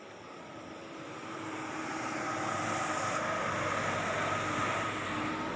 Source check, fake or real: real